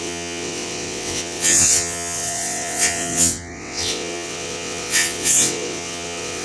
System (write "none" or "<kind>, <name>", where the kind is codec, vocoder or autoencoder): vocoder, WaveNeXt